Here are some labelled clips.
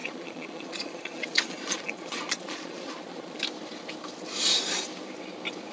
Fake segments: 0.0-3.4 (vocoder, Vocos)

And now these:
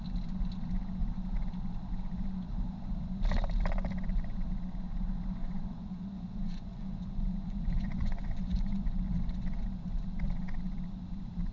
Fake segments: 5.4-9.2 (vocoder, Vocos)

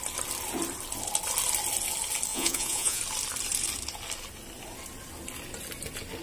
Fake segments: 2.3-3.0 (vocoder, Vocos)